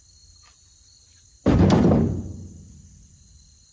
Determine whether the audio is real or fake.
fake